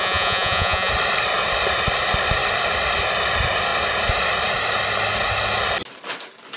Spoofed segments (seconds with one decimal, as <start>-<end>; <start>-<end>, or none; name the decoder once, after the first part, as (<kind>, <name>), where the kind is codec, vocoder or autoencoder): 0.0-0.9 (vocoder, Vocos)